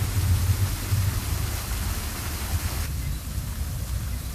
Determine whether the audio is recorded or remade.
recorded